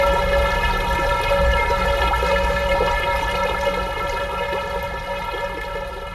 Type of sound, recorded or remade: recorded